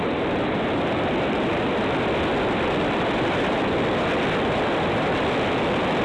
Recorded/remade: remade